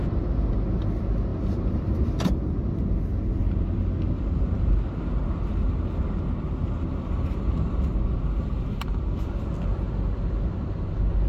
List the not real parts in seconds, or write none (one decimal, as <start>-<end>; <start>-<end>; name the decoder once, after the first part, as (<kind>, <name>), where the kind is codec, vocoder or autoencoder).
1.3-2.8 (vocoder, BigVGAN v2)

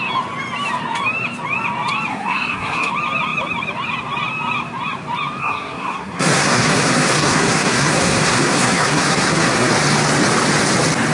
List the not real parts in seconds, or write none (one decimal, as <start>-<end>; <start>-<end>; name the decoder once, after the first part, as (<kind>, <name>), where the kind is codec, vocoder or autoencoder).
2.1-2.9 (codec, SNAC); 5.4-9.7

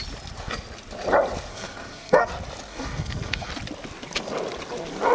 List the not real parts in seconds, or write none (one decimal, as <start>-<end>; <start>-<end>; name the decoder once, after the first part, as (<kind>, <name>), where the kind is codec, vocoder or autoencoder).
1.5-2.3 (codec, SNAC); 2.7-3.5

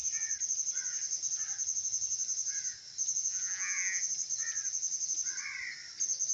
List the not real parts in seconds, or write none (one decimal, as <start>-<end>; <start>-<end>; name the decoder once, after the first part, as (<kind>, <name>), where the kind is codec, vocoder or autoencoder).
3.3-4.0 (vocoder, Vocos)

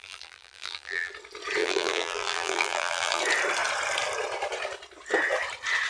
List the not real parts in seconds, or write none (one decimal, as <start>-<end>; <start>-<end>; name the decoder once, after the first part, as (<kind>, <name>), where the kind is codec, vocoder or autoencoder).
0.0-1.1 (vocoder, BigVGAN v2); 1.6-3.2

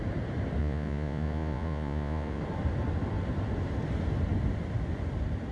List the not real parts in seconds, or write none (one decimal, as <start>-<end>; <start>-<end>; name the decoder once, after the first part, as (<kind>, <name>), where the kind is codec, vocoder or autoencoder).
0.6-2.4 (vocoder, Vocos)